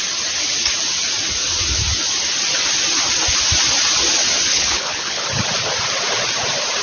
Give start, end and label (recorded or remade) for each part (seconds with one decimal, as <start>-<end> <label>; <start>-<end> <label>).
0.0-4.5 recorded; 4.5-5.2 remade; 5.2-6.8 recorded